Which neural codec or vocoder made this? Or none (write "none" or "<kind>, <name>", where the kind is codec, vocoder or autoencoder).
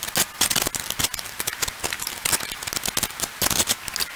none